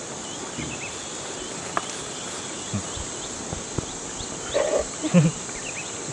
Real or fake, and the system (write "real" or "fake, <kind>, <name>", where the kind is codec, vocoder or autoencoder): real